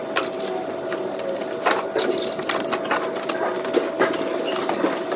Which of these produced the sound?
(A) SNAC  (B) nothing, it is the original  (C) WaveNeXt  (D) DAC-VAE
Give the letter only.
B